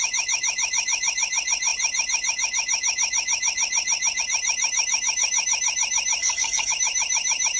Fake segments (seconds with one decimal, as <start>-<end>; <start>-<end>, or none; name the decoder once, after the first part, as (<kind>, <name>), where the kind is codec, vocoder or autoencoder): 6.2-6.7 (codec, SNAC)